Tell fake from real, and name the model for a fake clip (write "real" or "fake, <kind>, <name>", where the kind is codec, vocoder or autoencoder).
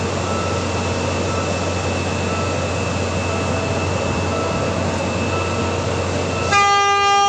real